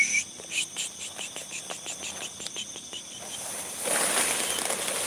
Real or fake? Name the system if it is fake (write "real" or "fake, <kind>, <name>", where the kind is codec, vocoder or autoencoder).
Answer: real